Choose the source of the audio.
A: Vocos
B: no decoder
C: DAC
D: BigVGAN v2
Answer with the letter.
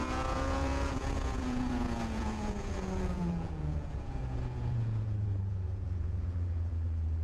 A